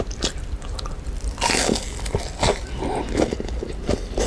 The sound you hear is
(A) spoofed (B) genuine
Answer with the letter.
B